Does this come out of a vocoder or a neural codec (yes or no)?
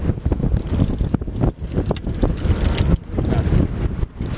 no